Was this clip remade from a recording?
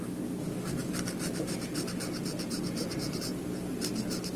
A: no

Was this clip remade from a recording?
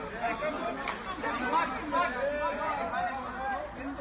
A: no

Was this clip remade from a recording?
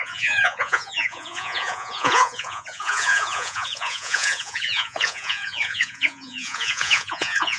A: yes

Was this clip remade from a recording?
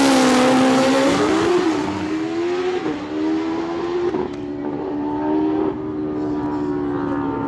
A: no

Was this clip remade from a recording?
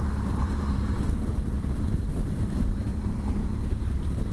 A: yes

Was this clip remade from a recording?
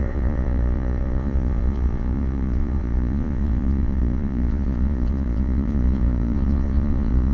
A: yes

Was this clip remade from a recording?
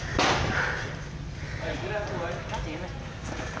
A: no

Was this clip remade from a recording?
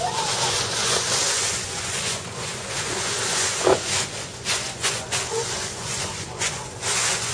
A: yes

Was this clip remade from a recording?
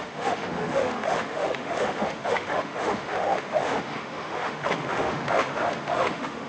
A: yes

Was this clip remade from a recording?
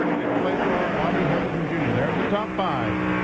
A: no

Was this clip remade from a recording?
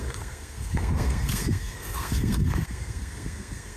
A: yes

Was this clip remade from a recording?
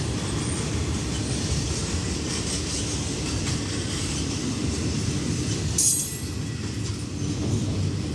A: no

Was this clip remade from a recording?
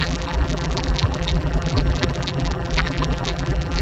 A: yes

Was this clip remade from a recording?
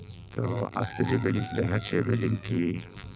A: yes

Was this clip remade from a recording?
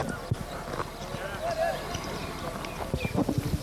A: no